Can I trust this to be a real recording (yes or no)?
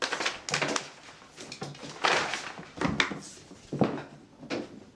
yes